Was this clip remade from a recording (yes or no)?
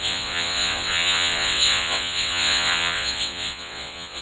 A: yes